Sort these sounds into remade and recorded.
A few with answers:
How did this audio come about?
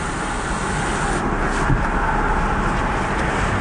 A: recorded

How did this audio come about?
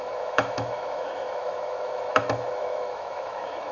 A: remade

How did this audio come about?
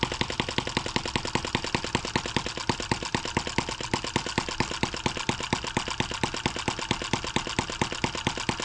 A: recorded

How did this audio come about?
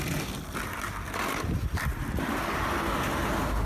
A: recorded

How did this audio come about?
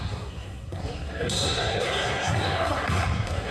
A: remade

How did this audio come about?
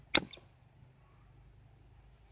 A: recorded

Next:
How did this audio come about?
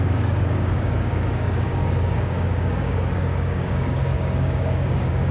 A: remade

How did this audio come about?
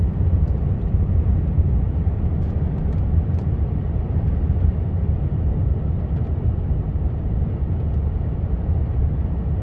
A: remade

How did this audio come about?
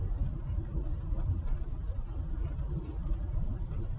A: recorded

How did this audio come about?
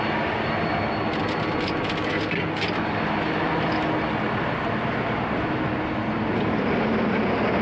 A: recorded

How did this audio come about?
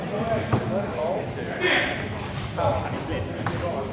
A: recorded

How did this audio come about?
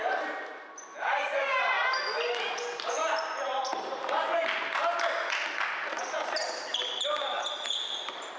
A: recorded